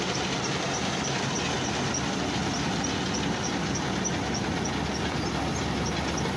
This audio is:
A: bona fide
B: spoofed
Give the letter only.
A